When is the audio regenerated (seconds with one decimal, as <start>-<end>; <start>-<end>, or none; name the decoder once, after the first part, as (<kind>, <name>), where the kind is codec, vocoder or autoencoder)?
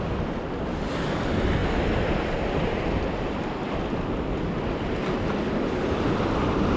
none